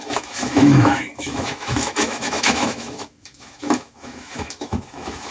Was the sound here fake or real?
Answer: fake